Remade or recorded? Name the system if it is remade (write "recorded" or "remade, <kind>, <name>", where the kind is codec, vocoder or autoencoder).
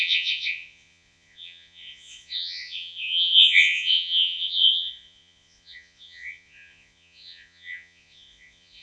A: remade, vocoder, Vocos